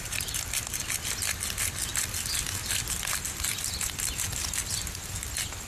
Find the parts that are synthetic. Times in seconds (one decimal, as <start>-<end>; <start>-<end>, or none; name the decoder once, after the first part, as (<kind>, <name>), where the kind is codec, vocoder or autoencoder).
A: none